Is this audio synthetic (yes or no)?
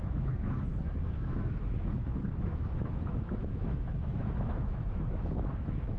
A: yes